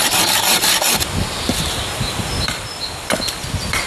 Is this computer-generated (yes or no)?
yes